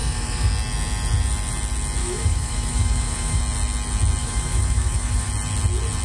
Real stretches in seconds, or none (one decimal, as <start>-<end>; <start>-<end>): 0.5-2.0; 3.4-4.2; 5.3-6.0